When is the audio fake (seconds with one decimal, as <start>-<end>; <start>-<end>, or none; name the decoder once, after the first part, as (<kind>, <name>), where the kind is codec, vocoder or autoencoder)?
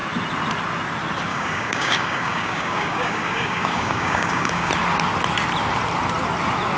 1.3-4.7 (codec, DAC)